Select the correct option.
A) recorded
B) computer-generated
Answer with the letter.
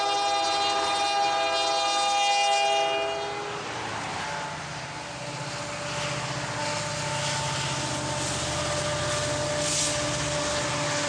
A